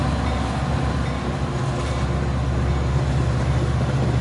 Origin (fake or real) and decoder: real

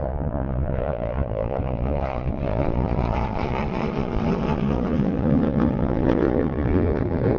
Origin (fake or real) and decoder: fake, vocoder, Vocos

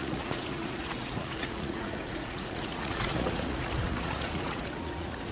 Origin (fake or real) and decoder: fake, vocoder, Vocos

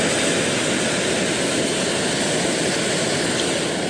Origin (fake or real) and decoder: real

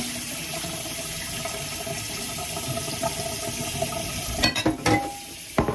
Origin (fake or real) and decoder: real